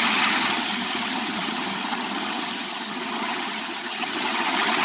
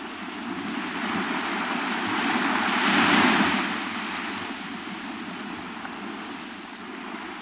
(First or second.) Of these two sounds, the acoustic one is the second